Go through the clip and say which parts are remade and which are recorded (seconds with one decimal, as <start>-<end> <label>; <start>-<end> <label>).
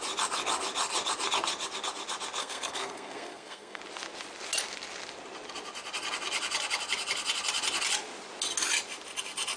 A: 0.0-2.4 recorded; 2.4-3.8 remade; 3.8-9.6 recorded